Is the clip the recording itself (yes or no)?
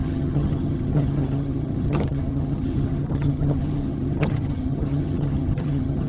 no